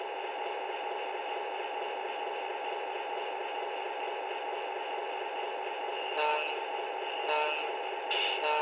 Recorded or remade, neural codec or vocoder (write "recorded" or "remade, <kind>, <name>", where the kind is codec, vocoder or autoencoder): recorded